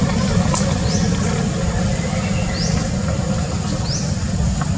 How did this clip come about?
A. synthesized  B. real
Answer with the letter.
B